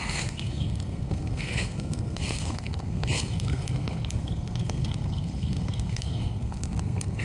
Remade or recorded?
remade